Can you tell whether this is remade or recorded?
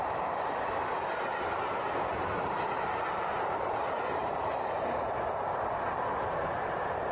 remade